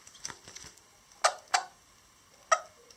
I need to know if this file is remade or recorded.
recorded